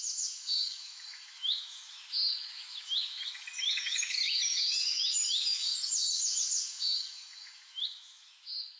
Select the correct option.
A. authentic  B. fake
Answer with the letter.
B